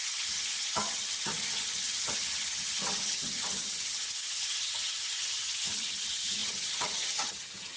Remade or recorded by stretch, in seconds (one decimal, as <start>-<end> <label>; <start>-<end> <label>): 0.0-7.8 remade